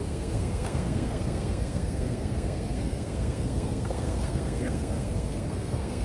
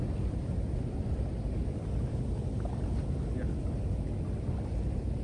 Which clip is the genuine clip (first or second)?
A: second